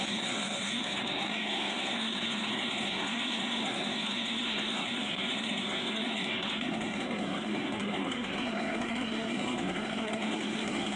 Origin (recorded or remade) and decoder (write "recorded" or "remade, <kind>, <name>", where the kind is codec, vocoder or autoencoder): remade, codec, SNAC